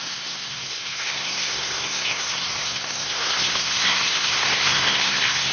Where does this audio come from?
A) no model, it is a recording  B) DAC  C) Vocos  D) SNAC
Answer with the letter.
D